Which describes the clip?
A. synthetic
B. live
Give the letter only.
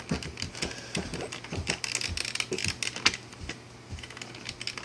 B